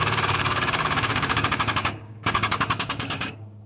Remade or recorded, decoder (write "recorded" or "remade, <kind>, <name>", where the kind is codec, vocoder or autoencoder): remade, codec, DAC